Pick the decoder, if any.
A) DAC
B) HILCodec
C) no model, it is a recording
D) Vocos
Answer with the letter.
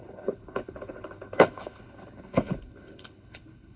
B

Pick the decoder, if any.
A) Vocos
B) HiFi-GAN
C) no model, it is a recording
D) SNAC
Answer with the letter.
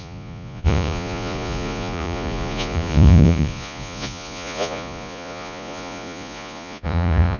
A